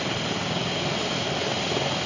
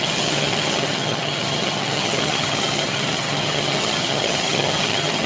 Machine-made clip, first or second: second